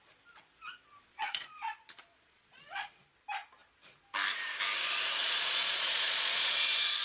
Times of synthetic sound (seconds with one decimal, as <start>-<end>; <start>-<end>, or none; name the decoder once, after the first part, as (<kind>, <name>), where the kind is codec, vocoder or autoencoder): 0.9-2.9 (vocoder, Vocos); 5.2-7.0